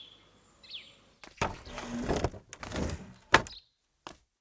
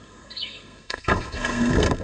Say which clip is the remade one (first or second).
second